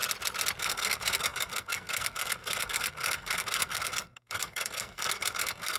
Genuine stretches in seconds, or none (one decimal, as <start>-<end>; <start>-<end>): 0.0-0.6